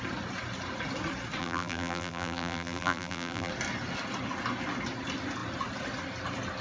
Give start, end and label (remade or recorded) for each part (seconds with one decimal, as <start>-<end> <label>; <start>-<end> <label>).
0.0-1.4 recorded; 1.4-3.5 remade; 3.5-6.6 recorded